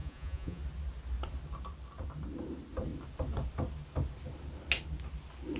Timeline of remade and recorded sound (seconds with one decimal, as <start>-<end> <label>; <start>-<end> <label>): 0.0-0.6 remade; 0.6-5.6 recorded